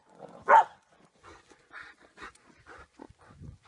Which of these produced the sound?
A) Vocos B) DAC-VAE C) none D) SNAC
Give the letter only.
A